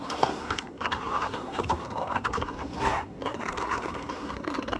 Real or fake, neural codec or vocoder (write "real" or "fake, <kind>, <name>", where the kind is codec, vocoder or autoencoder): fake, codec, SNAC